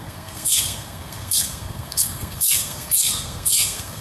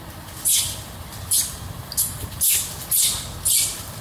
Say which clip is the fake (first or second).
first